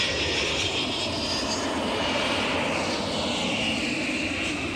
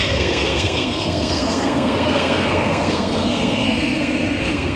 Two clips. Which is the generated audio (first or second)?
second